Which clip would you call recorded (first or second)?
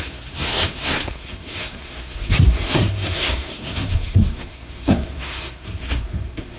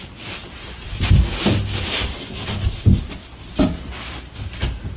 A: second